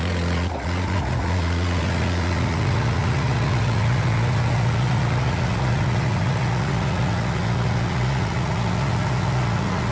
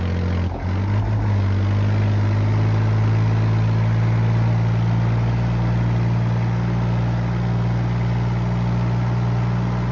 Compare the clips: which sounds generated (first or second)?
first